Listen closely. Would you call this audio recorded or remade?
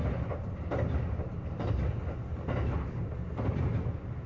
recorded